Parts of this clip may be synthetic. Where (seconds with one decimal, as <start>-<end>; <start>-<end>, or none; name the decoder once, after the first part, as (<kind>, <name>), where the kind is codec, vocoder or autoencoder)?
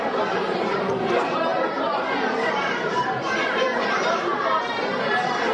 0.0-5.5 (vocoder, BigVGAN v2)